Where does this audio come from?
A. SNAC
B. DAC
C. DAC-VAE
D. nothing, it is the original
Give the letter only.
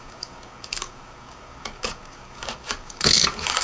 B